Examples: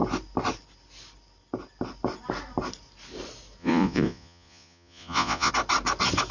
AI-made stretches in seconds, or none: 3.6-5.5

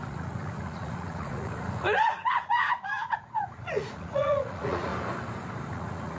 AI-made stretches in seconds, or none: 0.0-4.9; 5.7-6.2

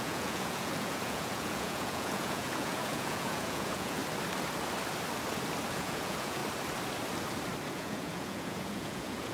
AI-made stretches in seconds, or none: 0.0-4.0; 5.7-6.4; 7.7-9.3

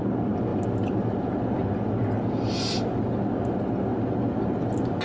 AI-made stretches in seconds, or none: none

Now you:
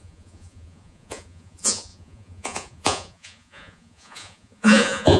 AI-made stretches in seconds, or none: 0.0-5.2

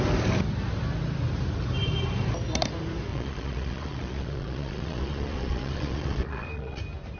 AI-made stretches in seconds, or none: 3.1-6.8